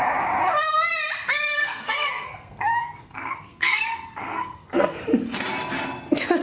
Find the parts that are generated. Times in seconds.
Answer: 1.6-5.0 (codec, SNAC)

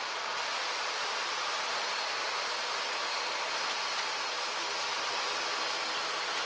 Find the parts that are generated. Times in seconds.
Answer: 0.0-4.9 (vocoder, BigVGAN v2); 6.0-6.5

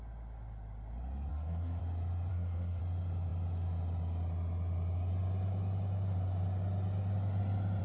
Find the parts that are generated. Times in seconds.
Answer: 1.3-1.8 (codec, SNAC); 2.3-2.8

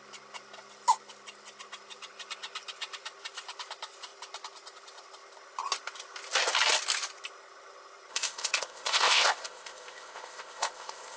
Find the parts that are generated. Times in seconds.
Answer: 8.1-11.2 (codec, ZipCodec)

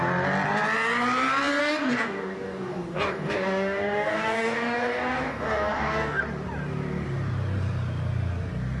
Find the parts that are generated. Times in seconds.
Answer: 1.6-6.2 (codec, DAC)

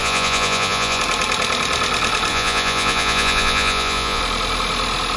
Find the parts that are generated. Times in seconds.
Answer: 0.0-1.0 (vocoder, Vocos); 2.3-4.2

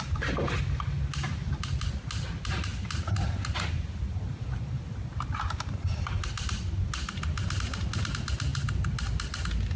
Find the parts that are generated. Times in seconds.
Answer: none